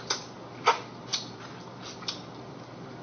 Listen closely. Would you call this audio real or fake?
real